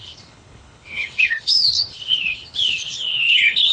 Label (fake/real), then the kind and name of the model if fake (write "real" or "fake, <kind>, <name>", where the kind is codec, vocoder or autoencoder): fake, codec, HILCodec